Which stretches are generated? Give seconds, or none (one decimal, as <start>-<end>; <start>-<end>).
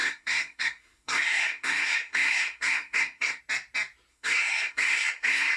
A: 0.0-3.4; 4.1-5.6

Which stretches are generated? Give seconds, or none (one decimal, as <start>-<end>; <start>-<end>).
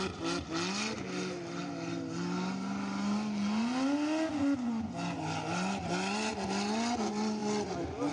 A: none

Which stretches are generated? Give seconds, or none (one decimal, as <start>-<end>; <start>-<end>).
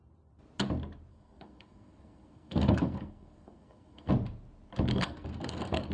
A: 1.1-4.1; 4.9-5.9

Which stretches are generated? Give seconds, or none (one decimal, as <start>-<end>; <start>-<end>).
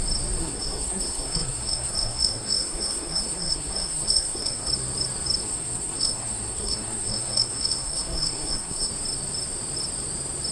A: 0.4-4.7; 5.4-8.9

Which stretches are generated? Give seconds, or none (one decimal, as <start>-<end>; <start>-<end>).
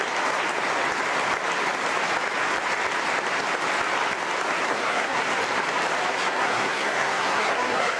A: 4.6-5.2; 6.1-8.0